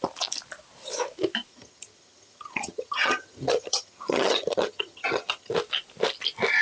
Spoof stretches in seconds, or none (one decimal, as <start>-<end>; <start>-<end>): 1.5-5.5